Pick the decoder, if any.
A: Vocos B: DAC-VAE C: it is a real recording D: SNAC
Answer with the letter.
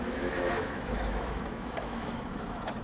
B